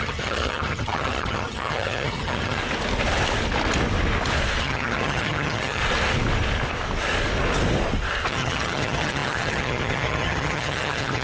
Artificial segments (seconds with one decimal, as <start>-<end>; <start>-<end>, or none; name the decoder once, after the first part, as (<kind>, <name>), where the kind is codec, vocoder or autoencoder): 0.0-2.6 (vocoder, HiFi-GAN); 4.6-5.8; 8.3-11.2